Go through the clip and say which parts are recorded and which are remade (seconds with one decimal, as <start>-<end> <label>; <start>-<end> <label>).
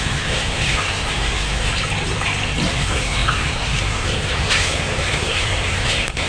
0.0-1.7 remade; 1.7-2.7 recorded; 2.7-6.3 remade